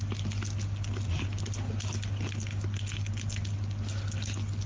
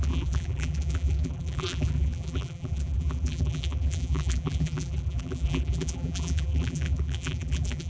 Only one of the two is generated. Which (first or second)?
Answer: second